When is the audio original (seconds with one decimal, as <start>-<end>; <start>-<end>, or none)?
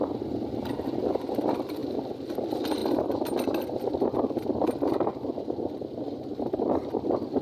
0.0-7.4